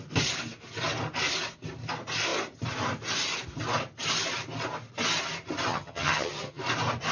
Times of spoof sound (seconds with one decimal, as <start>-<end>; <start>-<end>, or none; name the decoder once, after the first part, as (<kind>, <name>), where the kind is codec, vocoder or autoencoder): 5.7-6.6 (vocoder, HiFi-GAN)